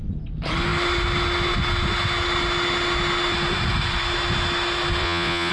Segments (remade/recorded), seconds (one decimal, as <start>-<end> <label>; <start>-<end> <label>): 0.0-5.0 recorded; 5.0-5.5 remade